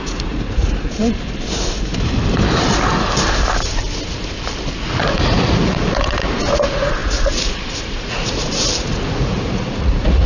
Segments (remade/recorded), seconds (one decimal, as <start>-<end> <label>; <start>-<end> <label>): 0.0-1.0 remade; 1.0-5.0 recorded; 5.0-10.3 remade